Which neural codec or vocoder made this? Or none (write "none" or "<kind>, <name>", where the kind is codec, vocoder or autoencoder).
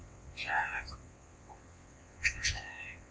vocoder, WaveNeXt